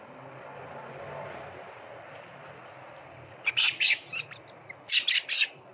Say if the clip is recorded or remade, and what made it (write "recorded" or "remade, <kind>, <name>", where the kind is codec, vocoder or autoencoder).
recorded